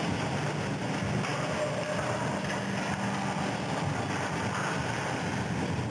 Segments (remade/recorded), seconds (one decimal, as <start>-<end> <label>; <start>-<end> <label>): 0.0-5.9 recorded